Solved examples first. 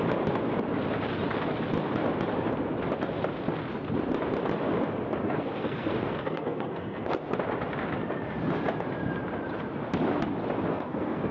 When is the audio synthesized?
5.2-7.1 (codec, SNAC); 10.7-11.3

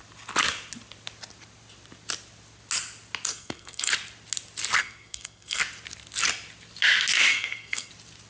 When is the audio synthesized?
3.3-3.9 (codec, SNAC); 4.8-5.6; 7.3-7.9

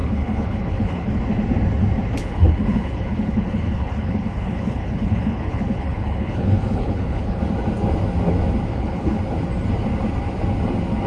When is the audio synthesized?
0.0-1.2 (codec, HILCodec); 2.2-7.4; 8.7-9.2

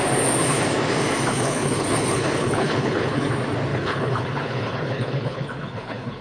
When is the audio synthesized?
1.3-3.3 (codec, HILCodec); 3.7-6.2